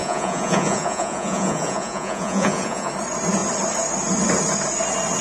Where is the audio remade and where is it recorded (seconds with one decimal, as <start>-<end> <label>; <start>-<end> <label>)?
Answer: 0.0-2.9 remade; 2.9-5.2 recorded